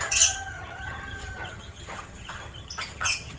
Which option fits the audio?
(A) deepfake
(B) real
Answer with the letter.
A